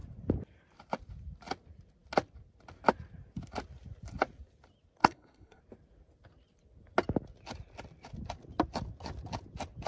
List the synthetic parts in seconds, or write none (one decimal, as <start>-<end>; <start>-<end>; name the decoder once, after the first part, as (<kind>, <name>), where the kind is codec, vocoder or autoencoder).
5.0-5.6 (codec, SNAC)